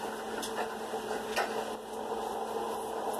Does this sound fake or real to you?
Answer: real